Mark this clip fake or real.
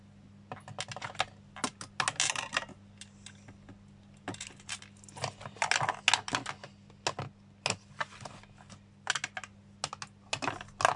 real